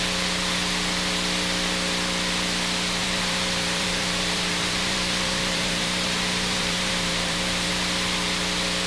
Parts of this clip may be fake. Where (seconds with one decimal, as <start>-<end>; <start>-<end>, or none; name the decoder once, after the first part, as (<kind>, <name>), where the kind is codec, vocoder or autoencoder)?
3.0-7.7 (vocoder, BigVGAN v2)